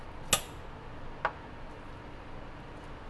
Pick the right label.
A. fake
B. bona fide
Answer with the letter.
B